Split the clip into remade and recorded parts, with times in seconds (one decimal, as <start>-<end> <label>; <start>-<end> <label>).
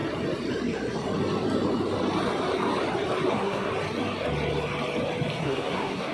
0.0-3.3 recorded; 3.3-3.7 remade; 3.7-5.4 recorded; 5.4-6.1 remade